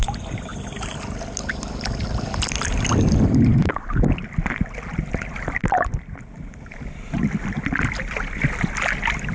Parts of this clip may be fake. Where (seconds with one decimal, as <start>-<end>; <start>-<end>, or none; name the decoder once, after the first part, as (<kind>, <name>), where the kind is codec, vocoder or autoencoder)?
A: none